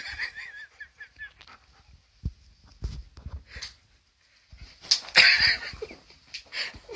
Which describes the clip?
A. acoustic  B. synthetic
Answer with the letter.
A